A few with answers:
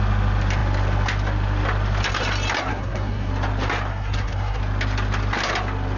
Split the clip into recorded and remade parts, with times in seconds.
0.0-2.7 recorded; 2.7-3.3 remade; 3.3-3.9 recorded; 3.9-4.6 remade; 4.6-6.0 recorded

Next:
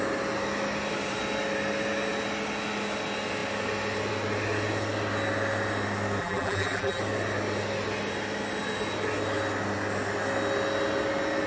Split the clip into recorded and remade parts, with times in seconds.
0.0-6.2 recorded; 6.2-7.0 remade; 7.0-11.5 recorded